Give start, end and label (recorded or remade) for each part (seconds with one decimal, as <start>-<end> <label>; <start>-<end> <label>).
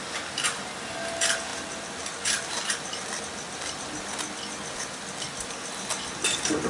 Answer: 0.0-6.7 recorded